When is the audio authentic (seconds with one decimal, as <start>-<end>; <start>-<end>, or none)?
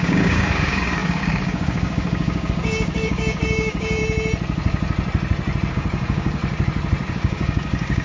4.0-5.7; 6.4-7.1